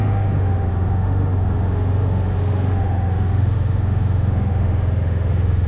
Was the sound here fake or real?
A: fake